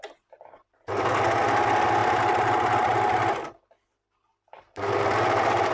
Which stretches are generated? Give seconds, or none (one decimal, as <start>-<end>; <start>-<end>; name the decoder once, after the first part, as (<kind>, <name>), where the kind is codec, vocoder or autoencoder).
none